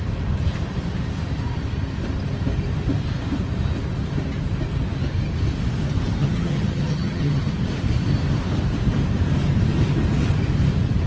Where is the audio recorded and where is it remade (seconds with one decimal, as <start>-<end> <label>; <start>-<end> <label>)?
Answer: 0.0-6.2 recorded; 6.2-7.4 remade; 7.4-11.1 recorded